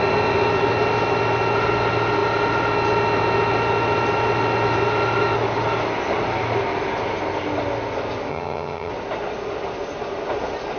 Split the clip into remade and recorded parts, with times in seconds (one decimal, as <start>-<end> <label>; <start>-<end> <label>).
0.0-8.3 recorded; 8.3-8.9 remade; 8.9-10.8 recorded